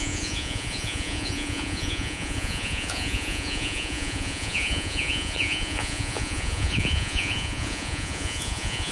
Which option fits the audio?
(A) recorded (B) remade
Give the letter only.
B